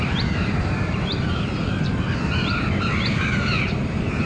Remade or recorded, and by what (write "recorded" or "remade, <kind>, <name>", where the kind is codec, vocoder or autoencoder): remade, vocoder, BigVGAN v2